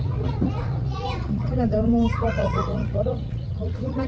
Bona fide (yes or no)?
no